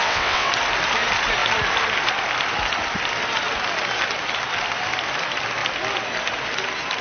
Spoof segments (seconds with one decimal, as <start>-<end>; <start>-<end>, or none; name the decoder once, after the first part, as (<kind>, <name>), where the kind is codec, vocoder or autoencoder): 0.0-0.5 (vocoder, WaveNeXt)